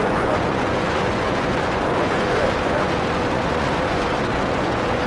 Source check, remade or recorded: remade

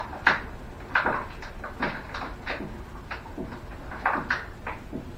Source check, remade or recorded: recorded